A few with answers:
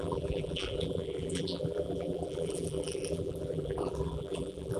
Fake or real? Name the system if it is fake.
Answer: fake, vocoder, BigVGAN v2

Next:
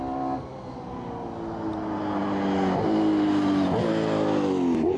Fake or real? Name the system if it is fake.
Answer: real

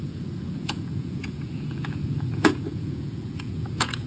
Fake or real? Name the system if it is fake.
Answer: fake, vocoder, Vocos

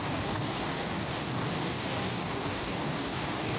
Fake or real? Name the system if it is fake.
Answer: fake, codec, DAC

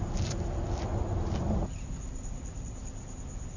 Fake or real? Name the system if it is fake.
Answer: real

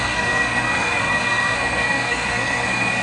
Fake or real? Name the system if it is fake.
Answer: fake, codec, SNAC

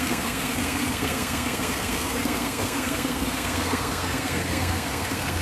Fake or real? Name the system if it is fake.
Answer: fake, codec, SNAC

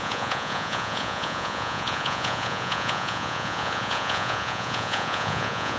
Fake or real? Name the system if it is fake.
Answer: fake, vocoder, Vocos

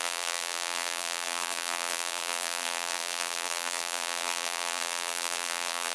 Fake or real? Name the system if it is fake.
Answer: fake, vocoder, BigVGAN v2